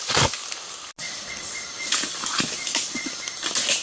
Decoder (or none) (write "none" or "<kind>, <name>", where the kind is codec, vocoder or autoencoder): none